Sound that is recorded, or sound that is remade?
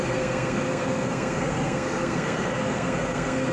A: remade